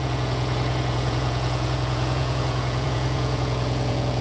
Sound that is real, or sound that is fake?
fake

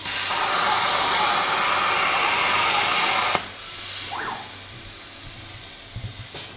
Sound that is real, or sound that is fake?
real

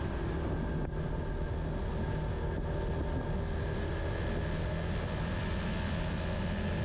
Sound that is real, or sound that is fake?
real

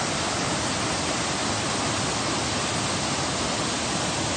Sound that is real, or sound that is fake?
real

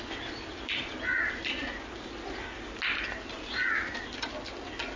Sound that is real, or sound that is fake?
real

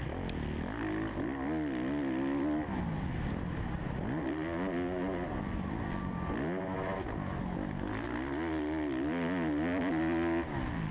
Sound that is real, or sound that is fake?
real